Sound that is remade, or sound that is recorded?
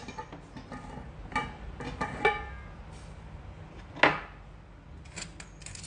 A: recorded